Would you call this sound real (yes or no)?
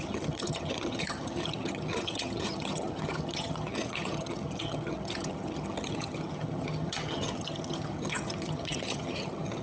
no